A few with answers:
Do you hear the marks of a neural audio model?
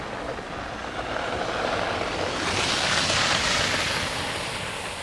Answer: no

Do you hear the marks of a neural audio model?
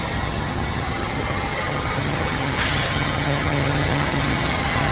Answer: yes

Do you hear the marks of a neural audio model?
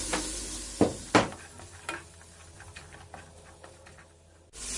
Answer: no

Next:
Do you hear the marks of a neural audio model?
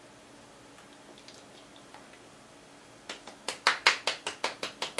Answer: no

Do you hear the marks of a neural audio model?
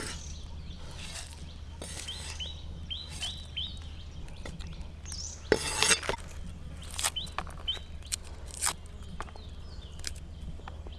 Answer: no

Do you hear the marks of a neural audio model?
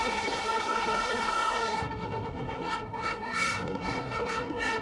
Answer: yes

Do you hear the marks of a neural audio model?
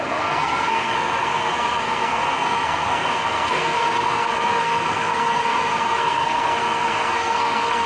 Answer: yes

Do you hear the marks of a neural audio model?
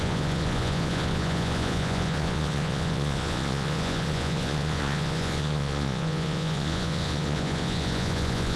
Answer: yes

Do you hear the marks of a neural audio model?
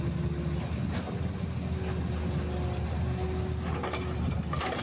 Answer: no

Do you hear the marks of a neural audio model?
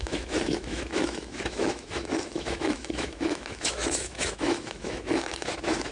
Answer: yes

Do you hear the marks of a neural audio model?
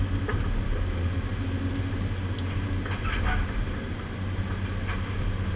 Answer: no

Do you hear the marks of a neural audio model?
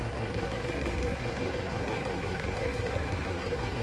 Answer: yes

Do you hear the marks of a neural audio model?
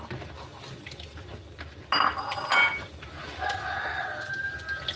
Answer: no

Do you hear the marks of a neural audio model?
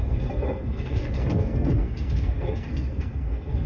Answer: yes